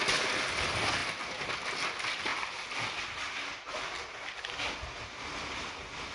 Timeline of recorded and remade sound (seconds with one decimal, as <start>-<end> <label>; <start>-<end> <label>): 0.0-6.1 recorded